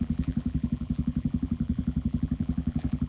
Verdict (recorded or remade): remade